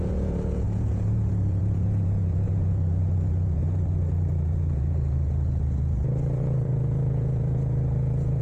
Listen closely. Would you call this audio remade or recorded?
remade